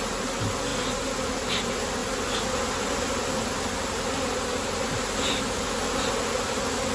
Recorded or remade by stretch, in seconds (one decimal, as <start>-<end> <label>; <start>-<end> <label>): 0.0-6.9 recorded